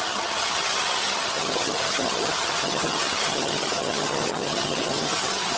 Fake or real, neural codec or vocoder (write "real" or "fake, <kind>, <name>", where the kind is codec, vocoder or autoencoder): fake, vocoder, HiFi-GAN